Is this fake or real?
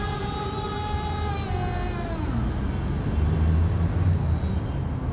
real